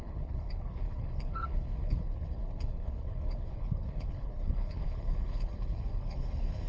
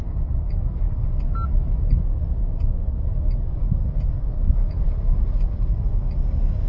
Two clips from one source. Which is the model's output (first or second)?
first